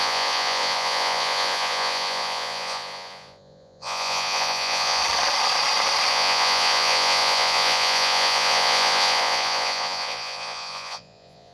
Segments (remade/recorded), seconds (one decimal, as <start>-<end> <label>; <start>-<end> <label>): 0.0-5.0 remade; 5.0-6.1 recorded; 6.1-11.5 remade